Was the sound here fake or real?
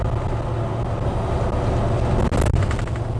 real